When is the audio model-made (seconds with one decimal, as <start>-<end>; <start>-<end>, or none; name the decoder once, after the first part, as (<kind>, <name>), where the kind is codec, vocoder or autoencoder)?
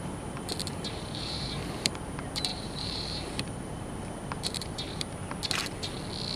0.7-1.9 (vocoder, BigVGAN v2); 2.5-5.0